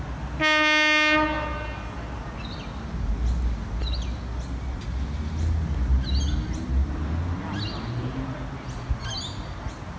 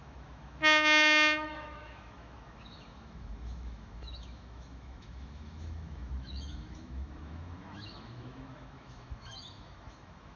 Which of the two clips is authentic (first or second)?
first